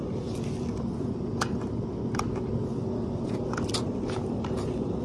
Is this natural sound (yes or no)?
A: yes